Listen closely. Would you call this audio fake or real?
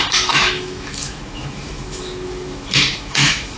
fake